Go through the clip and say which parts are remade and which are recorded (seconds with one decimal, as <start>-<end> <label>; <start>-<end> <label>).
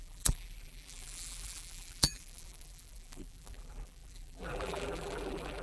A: 0.0-5.6 remade